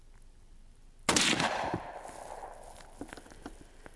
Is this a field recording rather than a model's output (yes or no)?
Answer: yes